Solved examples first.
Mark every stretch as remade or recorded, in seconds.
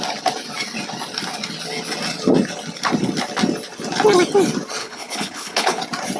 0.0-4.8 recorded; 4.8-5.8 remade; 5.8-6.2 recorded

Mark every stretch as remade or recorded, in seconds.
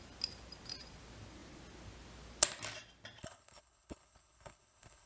0.0-3.2 recorded; 3.2-5.1 remade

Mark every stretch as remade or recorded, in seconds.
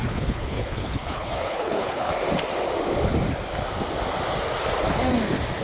0.0-2.1 remade; 2.1-5.6 recorded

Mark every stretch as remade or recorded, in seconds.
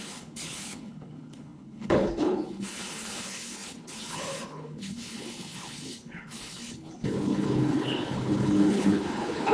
0.0-9.5 remade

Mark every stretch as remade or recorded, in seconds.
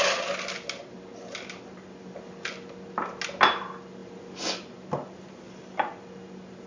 0.0-6.7 recorded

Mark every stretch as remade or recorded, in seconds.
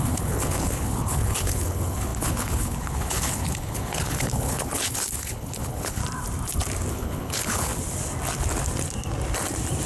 0.0-6.0 remade; 6.0-6.9 recorded; 6.9-7.7 remade; 7.7-9.9 recorded